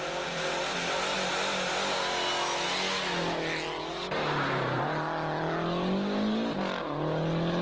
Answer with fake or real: real